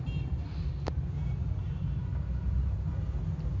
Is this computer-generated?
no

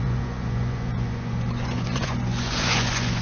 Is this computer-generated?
yes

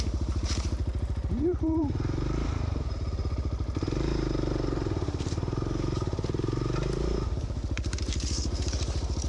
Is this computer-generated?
yes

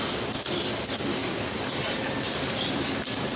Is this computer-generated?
no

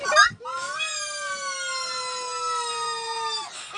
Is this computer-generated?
no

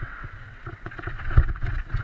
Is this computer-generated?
yes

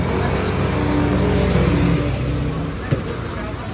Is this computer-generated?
no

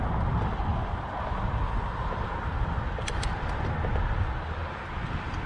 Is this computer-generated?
no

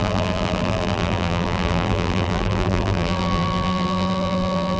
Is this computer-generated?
yes